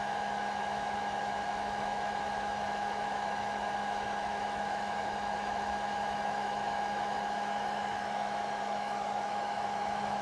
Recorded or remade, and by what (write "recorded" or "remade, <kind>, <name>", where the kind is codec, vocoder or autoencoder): remade, autoencoder, DAC-VAE